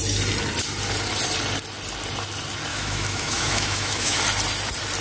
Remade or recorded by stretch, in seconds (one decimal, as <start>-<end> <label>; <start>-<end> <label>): 0.0-2.7 recorded; 2.7-4.2 remade; 4.2-5.0 recorded